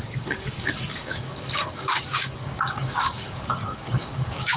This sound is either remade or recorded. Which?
remade